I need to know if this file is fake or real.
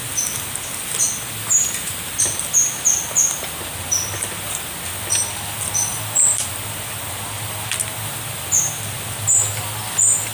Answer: real